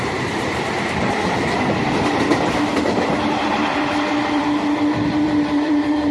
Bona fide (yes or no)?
no